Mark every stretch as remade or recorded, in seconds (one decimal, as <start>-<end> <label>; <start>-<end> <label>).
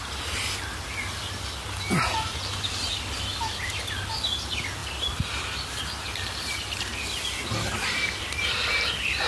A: 0.0-9.3 recorded